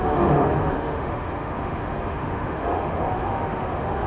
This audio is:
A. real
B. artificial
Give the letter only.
B